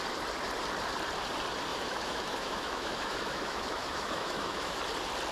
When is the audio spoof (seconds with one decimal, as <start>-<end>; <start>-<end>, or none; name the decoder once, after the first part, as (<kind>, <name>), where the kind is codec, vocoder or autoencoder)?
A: 1.7-4.8 (autoencoder, DAC-VAE)